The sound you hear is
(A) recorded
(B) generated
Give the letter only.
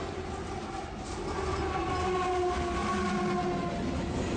A